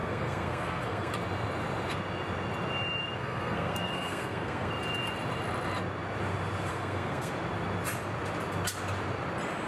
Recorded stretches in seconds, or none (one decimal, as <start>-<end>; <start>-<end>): 1.1-3.2; 4.7-6.7; 7.3-9.7